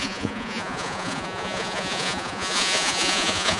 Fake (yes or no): yes